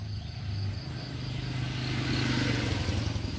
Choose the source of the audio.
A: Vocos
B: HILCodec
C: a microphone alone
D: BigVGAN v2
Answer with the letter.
C